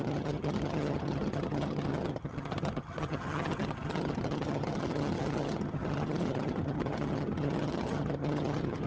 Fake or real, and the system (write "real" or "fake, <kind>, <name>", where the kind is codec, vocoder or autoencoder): fake, vocoder, HiFi-GAN